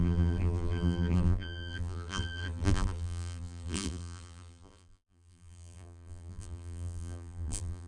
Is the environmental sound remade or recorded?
remade